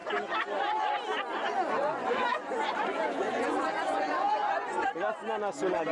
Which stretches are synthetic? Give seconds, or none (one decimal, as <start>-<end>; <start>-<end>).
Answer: 1.8-5.2